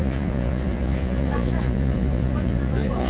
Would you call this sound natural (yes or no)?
no